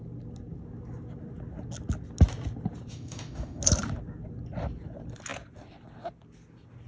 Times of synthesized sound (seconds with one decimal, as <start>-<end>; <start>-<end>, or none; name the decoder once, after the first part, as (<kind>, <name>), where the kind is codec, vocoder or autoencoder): 2.9-3.6 (autoencoder, DAC-VAE)